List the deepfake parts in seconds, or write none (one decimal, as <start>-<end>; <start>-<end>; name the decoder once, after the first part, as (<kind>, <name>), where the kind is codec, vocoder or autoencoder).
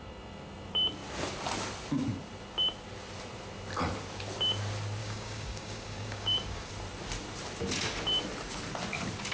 5.0-6.7 (codec, DAC)